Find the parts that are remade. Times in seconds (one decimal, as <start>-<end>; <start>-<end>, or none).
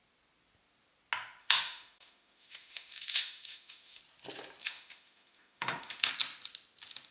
1.4-4.0; 4.6-6.1